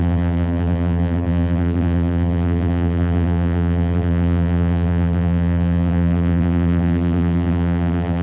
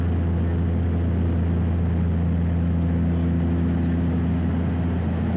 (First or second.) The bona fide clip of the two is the second